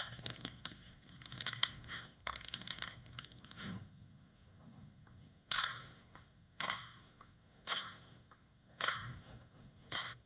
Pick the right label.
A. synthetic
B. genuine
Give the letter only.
A